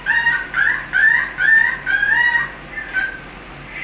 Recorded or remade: recorded